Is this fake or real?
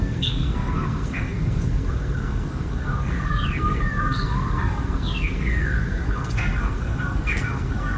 fake